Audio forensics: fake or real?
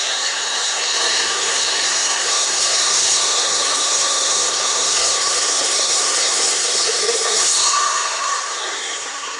fake